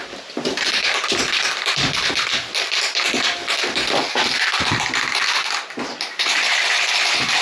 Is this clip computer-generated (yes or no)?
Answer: yes